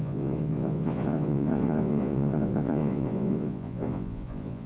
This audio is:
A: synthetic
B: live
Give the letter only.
A